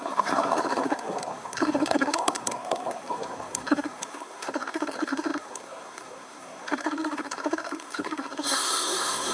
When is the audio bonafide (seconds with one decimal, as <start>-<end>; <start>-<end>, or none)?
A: none